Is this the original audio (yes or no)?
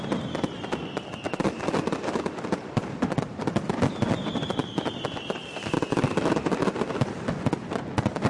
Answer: no